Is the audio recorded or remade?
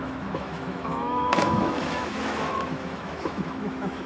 remade